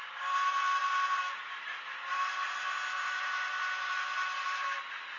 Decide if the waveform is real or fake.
real